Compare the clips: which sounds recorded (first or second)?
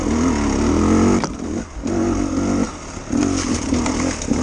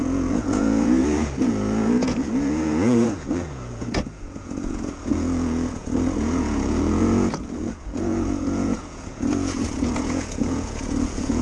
first